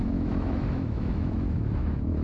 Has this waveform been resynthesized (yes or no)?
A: yes